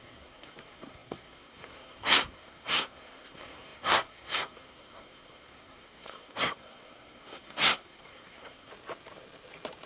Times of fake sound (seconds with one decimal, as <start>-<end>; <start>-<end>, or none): 0.0-8.7